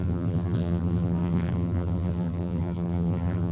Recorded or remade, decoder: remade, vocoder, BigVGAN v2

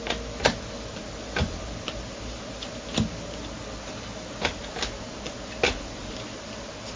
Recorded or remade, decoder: recorded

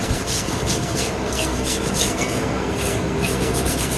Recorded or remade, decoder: remade, codec, SNAC